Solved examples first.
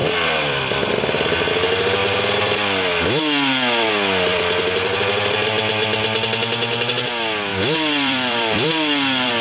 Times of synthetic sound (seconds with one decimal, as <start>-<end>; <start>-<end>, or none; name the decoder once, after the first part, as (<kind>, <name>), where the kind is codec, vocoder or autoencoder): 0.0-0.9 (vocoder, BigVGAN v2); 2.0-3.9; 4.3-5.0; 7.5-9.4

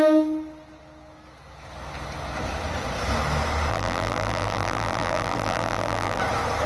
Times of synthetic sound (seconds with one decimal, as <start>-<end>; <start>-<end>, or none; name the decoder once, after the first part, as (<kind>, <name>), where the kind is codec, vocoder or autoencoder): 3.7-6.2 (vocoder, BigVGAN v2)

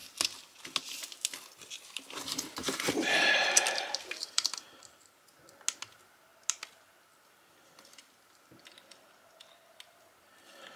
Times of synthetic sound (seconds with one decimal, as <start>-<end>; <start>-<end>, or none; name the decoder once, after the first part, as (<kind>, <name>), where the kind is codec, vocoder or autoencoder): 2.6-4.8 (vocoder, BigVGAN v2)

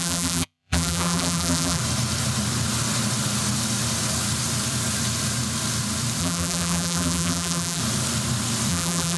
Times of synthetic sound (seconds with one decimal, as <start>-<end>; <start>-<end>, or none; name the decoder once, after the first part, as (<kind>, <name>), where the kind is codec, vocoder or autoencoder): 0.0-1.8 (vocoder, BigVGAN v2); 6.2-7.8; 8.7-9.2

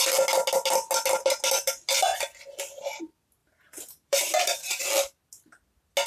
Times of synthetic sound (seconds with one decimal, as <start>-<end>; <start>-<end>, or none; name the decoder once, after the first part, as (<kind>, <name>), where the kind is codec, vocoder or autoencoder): 3.4-4.8 (vocoder, BigVGAN v2)

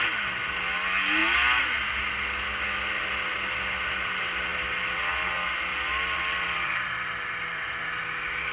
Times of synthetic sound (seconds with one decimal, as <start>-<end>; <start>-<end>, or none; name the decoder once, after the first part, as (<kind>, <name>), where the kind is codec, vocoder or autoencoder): 4.5-5.1 (vocoder, BigVGAN v2); 5.7-7.8

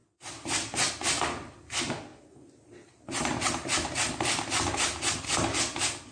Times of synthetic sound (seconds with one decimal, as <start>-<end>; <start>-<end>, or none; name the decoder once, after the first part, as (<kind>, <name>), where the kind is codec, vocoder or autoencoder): none